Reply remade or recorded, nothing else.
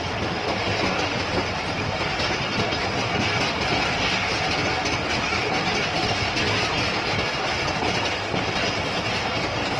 recorded